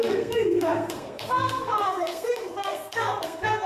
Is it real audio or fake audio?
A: fake